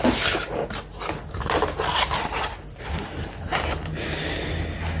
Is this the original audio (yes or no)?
yes